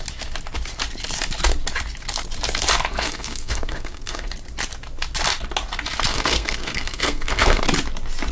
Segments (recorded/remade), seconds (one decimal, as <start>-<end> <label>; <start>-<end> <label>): 0.0-2.9 recorded; 2.9-4.3 remade; 4.3-6.1 recorded; 6.1-7.6 remade; 7.6-8.3 recorded